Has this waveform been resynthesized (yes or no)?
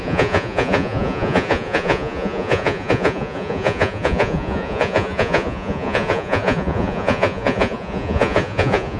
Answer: yes